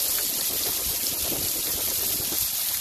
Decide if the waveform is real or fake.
real